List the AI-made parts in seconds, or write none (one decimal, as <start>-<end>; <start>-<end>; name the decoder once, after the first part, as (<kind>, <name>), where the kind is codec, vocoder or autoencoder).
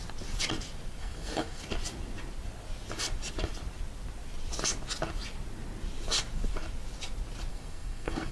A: 1.0-1.6 (codec, SNAC); 7.5-8.3